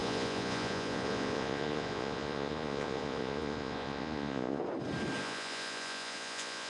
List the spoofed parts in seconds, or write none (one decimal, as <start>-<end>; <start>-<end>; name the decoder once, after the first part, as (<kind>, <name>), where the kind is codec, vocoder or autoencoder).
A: 0.0-4.6 (vocoder, Vocos); 5.2-6.7